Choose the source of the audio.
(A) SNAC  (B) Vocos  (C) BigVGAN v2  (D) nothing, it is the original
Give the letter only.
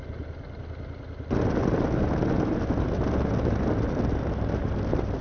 D